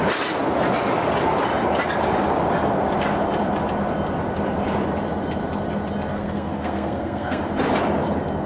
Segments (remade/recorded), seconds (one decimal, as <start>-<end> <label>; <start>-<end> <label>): 0.0-6.1 recorded; 6.1-7.4 remade; 7.4-8.5 recorded